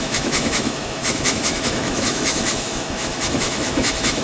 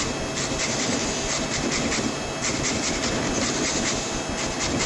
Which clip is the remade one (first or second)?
first